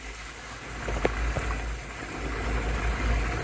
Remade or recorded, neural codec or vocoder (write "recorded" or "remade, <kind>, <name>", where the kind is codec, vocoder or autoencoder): recorded